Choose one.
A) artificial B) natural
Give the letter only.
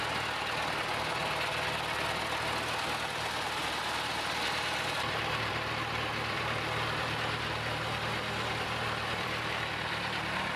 A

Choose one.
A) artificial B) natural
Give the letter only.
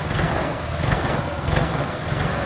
A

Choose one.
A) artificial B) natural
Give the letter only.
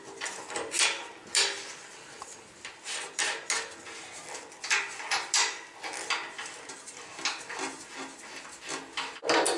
B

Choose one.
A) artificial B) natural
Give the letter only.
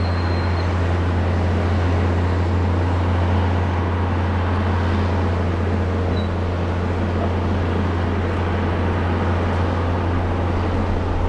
B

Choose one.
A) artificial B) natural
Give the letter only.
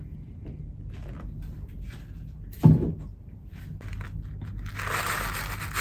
B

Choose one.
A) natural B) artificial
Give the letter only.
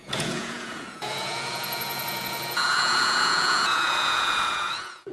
B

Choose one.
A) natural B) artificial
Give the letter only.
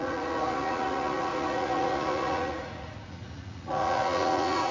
B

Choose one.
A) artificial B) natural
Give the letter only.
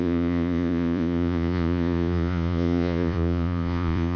A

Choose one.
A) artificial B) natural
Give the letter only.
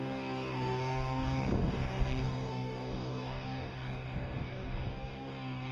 A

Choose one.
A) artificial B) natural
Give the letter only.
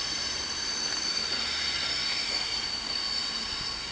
B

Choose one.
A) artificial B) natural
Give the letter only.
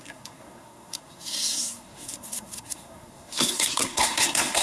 A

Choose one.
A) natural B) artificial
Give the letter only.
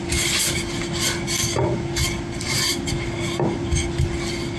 A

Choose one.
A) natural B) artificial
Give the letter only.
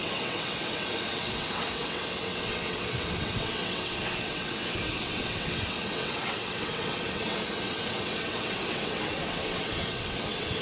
B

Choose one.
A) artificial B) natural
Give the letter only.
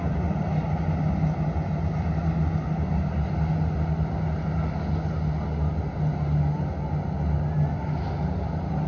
B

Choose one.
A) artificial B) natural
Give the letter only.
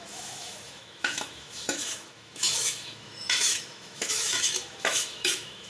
A